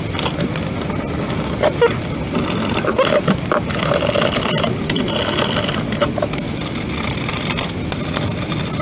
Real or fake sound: real